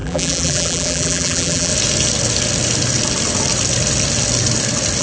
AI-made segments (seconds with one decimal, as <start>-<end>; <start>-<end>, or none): 0.0-1.7